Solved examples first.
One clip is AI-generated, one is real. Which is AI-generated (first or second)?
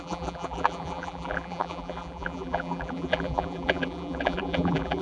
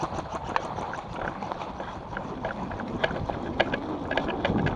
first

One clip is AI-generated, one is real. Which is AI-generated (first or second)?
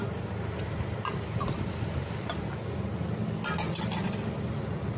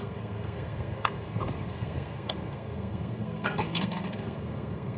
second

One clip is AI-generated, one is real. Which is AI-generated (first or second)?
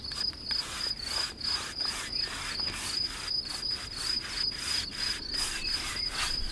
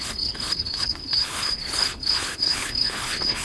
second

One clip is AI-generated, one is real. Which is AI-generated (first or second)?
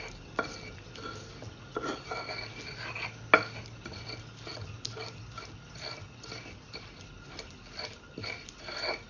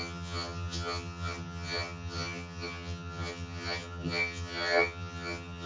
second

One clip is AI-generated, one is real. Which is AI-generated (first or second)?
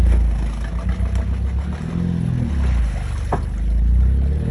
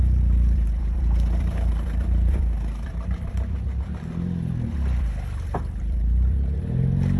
second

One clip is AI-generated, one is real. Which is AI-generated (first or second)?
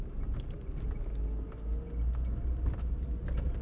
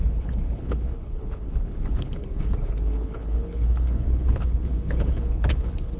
second